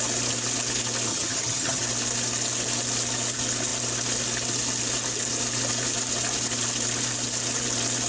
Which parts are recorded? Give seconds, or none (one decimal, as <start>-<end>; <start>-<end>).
0.0-1.1; 1.8-8.1